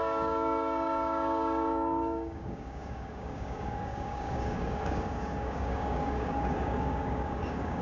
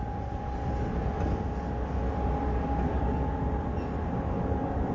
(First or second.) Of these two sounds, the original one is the second